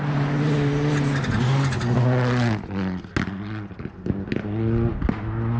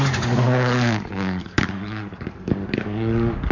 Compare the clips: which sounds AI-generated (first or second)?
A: second